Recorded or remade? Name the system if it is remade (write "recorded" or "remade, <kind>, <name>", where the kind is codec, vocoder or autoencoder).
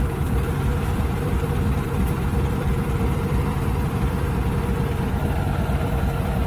remade, vocoder, BigVGAN v2